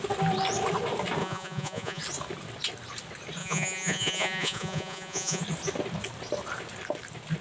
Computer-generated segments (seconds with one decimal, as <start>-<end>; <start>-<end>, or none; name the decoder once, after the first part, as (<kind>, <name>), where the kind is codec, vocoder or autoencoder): 1.2-2.0 (vocoder, Vocos); 3.4-5.4